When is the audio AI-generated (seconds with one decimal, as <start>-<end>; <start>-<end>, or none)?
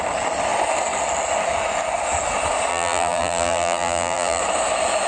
2.7-4.4